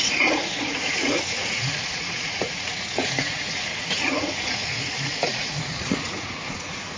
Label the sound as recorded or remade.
remade